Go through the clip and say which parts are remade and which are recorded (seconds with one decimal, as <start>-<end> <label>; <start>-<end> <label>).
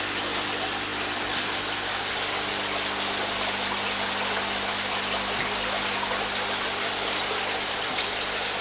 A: 0.0-8.6 recorded